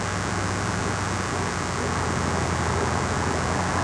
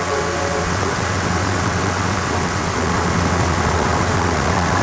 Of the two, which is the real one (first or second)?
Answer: first